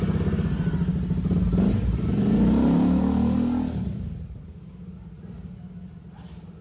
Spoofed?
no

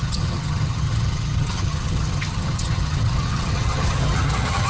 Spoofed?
yes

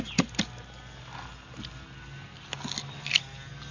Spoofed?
no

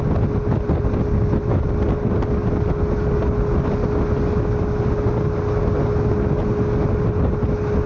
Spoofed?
no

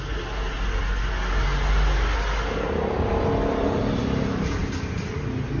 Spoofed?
no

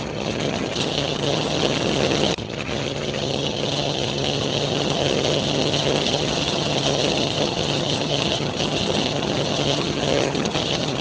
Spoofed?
yes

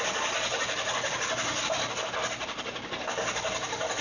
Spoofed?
no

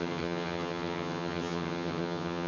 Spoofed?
yes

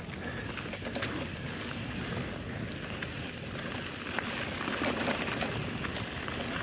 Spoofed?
no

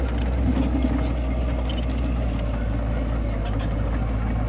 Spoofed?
no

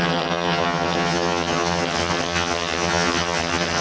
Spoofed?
yes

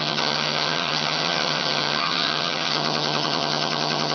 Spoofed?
yes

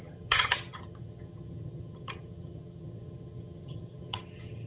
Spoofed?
yes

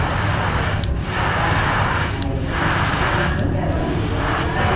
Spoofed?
no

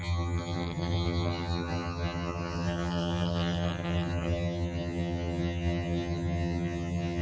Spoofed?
yes